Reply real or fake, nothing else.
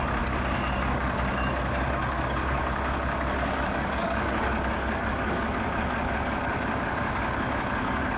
fake